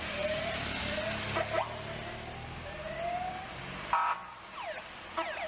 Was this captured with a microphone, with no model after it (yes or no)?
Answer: yes